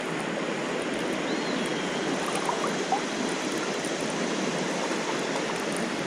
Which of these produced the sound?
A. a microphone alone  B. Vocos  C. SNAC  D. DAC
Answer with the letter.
A